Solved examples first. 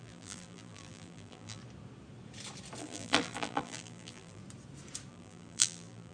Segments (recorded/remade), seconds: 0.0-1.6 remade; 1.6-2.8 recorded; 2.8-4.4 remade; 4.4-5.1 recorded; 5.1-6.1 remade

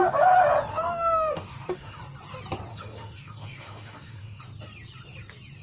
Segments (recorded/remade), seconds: 0.0-0.7 recorded; 0.7-2.0 remade; 2.0-2.7 recorded; 2.7-4.4 remade; 4.4-5.6 recorded

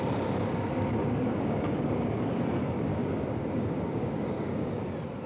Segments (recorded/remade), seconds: 0.0-1.0 recorded; 1.0-2.4 remade; 2.4-2.9 recorded; 2.9-4.7 remade; 4.7-5.3 recorded